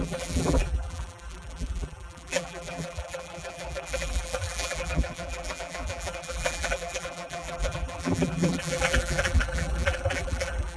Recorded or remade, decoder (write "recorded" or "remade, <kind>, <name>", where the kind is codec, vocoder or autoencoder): remade, vocoder, BigVGAN v2